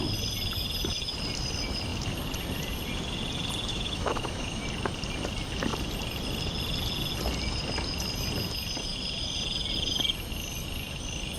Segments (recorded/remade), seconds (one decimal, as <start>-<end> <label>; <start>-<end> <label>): 0.0-3.7 recorded; 3.7-4.6 remade; 4.6-11.4 recorded